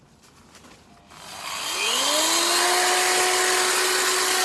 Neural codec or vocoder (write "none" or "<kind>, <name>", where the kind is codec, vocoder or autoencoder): none